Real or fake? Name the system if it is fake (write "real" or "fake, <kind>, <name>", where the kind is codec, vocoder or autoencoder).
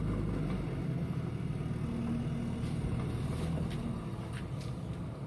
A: real